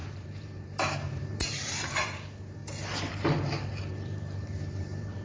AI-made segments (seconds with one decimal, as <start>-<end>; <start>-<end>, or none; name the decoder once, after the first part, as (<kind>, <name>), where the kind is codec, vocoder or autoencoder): 0.0-2.6 (vocoder, BigVGAN v2); 3.8-5.2